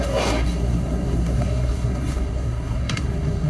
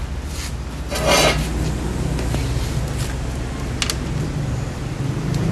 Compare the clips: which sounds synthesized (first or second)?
first